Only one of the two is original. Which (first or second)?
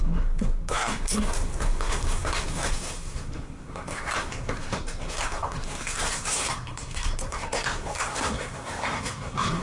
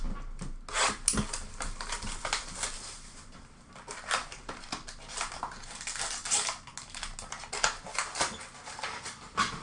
second